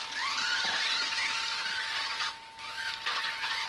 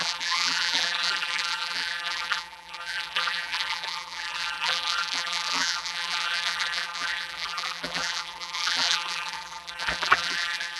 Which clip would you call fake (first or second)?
second